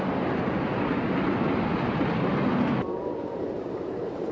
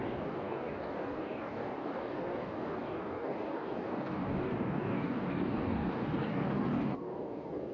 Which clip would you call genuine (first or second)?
first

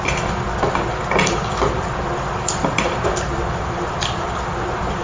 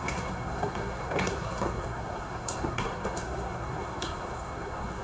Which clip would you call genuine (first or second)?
first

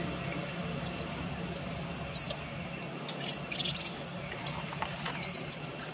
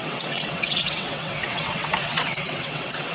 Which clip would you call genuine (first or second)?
first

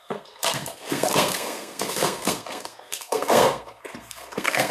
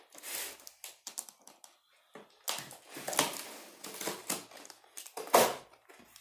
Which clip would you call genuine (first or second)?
second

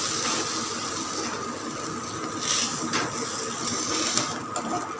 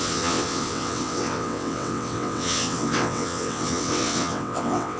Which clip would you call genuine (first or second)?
first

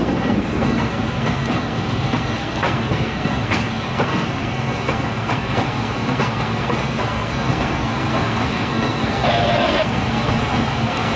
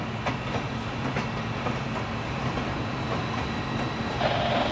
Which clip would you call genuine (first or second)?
second